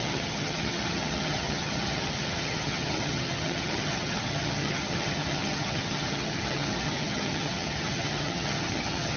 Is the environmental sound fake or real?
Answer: fake